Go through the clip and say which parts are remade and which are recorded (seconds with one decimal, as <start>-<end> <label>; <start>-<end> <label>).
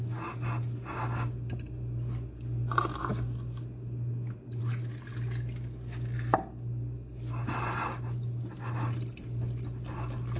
0.0-10.4 recorded